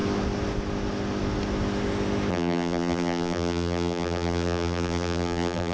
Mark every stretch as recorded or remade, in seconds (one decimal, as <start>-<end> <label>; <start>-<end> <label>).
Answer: 0.0-2.3 recorded; 2.3-5.7 remade